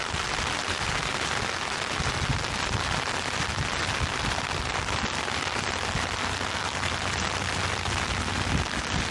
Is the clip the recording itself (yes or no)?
yes